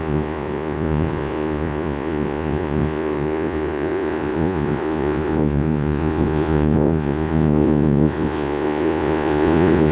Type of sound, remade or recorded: remade